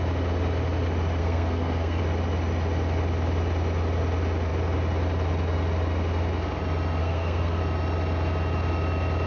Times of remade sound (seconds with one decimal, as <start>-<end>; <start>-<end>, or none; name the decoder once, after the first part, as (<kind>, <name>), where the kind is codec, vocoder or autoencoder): 1.2-2.0 (codec, SNAC); 7.0-7.6